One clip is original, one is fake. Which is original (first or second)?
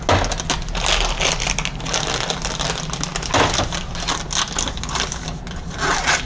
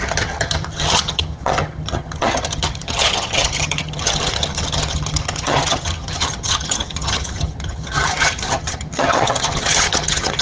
first